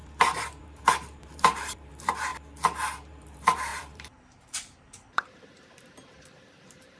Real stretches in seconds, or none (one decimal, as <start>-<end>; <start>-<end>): 0.0-0.6; 2.3-3.1

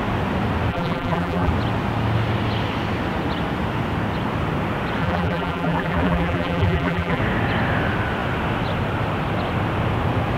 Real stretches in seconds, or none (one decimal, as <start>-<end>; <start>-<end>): 0.0-0.7; 1.5-5.0; 7.2-10.4

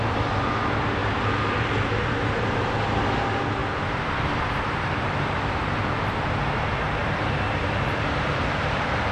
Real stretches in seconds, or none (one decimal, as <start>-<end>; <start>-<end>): 1.0-1.6

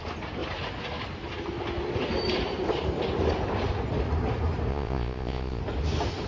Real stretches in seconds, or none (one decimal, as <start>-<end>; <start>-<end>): 0.0-4.7; 5.6-6.3

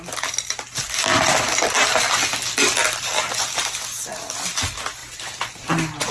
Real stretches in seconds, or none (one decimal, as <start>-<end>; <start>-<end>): 0.0-6.1

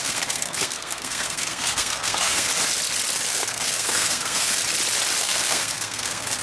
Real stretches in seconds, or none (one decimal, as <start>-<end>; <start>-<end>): 2.5-3.3; 4.6-5.2

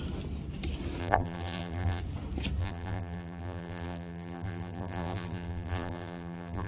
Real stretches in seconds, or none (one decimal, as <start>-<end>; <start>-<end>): 0.0-1.0; 2.0-2.6